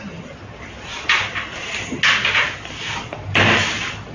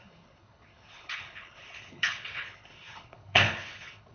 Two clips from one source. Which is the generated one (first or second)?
second